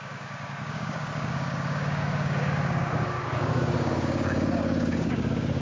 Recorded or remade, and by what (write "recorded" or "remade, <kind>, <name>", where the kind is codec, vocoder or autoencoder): remade, codec, DAC